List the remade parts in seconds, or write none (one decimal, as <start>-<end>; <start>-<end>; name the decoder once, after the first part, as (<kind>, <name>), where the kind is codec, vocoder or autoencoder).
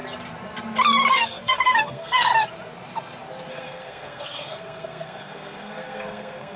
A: 1.1-2.3 (codec, SNAC); 3.5-6.6